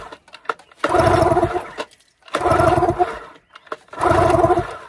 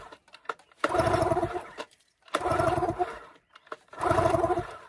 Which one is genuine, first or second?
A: first